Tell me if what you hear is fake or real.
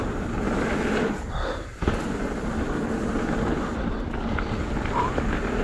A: real